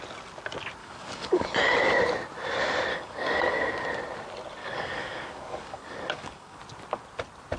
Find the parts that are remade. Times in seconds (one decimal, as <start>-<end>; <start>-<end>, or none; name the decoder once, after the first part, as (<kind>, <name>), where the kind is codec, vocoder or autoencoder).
0.8-1.5 (codec, DAC); 2.9-3.6; 4.6-6.6